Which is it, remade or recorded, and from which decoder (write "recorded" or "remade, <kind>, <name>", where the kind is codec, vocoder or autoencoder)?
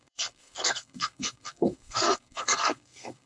remade, codec, SNAC